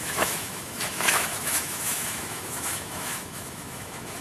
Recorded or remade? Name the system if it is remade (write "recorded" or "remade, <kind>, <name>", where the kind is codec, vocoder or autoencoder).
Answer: remade, autoencoder, DAC-VAE